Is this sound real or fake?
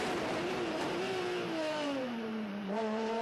fake